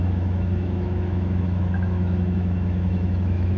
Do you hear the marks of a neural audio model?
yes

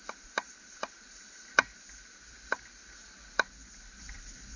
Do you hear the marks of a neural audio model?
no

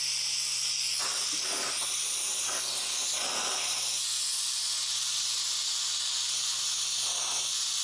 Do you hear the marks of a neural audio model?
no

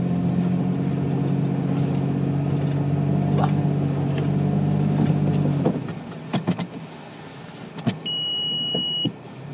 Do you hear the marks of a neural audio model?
no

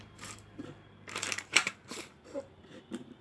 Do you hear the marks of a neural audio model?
yes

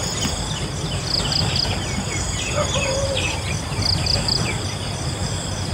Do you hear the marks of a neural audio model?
no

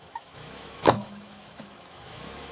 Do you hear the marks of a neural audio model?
yes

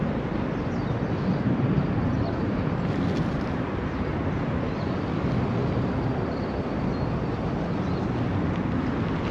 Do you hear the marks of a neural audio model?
no